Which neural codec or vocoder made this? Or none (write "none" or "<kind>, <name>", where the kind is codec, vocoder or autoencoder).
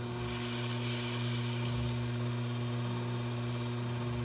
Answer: none